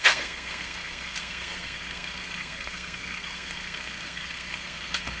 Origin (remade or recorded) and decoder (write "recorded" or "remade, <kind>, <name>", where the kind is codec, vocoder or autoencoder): remade, codec, SNAC